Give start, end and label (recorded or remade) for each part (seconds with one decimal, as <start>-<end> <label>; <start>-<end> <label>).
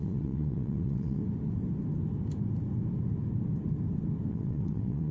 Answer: 0.0-1.2 remade; 1.2-4.3 recorded; 4.3-5.1 remade